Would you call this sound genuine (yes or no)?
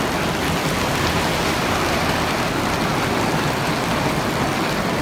yes